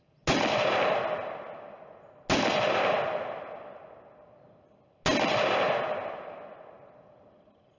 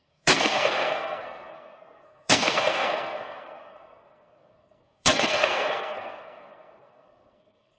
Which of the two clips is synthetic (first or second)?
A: second